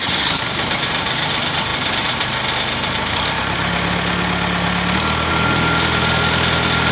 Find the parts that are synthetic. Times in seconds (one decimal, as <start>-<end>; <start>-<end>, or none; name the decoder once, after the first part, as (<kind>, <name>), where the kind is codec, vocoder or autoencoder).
none